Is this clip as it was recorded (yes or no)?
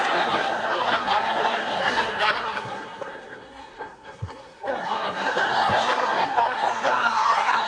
no